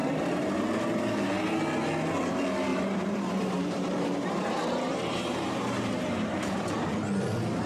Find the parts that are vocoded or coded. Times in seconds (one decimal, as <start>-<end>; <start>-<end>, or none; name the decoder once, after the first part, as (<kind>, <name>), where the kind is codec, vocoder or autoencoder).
0.0-1.2 (vocoder, BigVGAN v2); 2.7-6.8